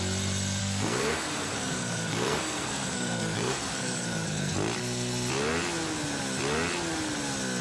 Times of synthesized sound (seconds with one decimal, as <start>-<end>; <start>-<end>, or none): 0.6-4.5